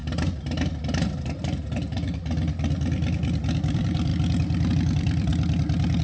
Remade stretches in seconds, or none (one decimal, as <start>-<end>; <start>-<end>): 3.6-4.1; 4.7-5.3